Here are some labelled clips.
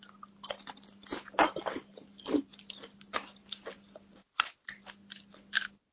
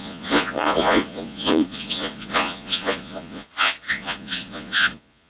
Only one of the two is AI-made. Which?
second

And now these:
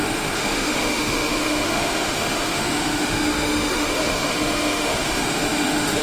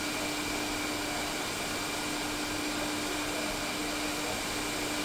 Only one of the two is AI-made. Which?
first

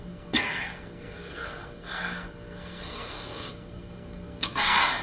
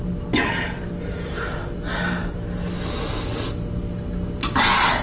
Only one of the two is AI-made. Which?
first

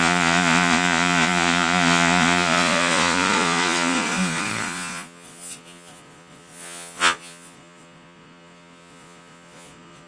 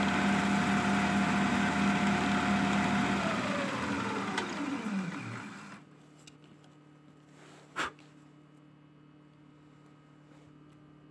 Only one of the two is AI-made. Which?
first